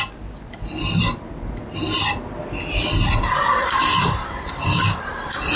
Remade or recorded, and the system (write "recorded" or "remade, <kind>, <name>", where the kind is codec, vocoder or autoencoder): recorded